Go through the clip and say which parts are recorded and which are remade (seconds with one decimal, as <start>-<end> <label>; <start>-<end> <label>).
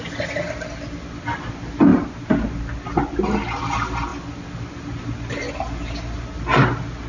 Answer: 0.0-7.1 recorded